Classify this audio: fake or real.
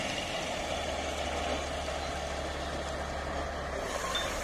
real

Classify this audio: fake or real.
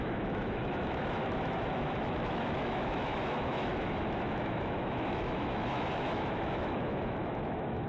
fake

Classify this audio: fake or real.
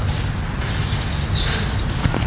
real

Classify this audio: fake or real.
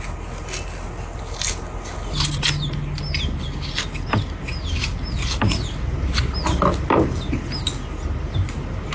real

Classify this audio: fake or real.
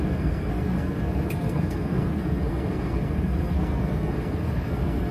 fake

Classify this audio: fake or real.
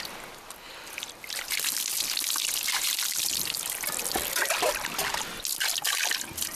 real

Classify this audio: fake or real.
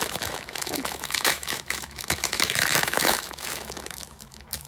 fake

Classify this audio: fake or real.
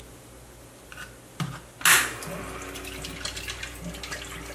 real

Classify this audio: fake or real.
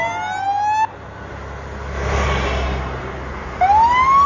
real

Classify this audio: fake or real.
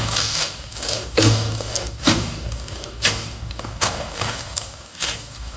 fake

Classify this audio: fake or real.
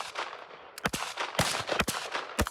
real